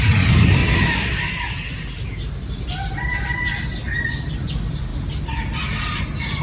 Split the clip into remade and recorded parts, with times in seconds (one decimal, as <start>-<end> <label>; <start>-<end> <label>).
0.0-0.6 remade; 0.6-4.4 recorded; 4.4-4.9 remade; 4.9-6.0 recorded; 6.0-6.4 remade